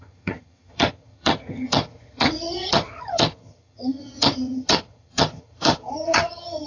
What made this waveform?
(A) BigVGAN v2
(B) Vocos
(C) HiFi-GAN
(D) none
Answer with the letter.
C